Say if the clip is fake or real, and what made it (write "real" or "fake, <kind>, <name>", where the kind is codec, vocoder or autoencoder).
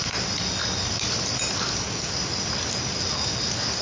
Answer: real